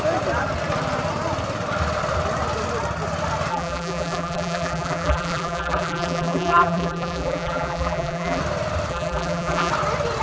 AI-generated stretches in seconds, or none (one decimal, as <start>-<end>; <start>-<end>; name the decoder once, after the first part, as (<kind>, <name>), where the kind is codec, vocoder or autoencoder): 3.5-8.4 (vocoder, BigVGAN v2); 8.9-9.7